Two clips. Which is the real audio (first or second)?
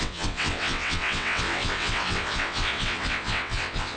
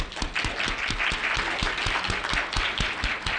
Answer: second